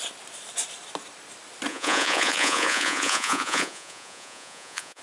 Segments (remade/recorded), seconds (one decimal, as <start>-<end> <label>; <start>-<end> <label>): 0.0-1.7 recorded; 1.7-5.0 remade